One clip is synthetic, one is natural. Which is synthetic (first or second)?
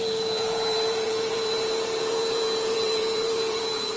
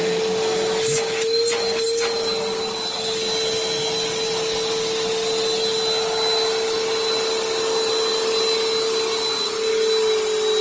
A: first